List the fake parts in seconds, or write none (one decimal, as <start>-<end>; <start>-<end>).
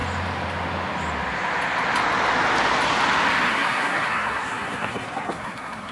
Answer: 3.5-5.9